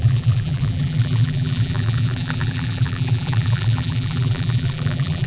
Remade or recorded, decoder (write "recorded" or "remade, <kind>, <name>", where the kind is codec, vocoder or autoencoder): remade, vocoder, BigVGAN v2